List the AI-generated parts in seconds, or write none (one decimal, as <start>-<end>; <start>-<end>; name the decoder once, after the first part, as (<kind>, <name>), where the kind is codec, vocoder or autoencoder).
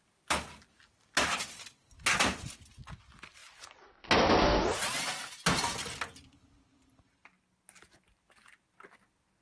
none